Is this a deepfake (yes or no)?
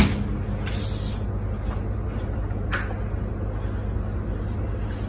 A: no